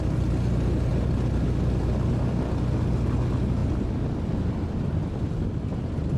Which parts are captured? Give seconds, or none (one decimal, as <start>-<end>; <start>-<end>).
0.0-6.2